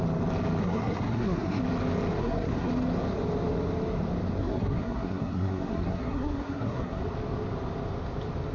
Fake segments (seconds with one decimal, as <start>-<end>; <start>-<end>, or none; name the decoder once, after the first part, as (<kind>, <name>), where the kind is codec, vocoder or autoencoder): 0.6-1.6 (codec, SNAC); 2.2-2.7; 4.4-7.0